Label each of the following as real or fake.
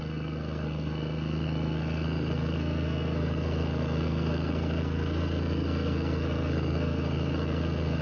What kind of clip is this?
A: fake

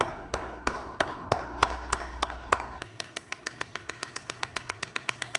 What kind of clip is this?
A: fake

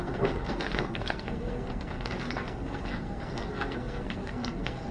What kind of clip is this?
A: fake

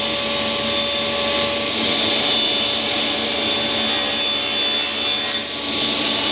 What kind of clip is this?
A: real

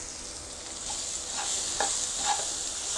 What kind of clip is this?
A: real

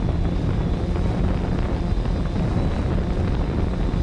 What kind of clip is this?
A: real